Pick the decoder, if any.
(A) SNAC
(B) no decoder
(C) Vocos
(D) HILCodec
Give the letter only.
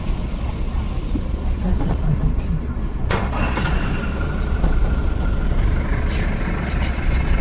C